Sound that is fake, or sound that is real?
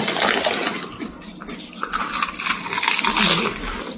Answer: real